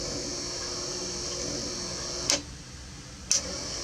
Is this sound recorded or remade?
recorded